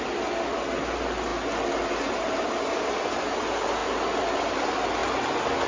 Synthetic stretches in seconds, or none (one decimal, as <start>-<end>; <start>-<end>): none